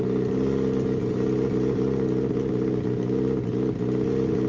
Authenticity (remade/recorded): recorded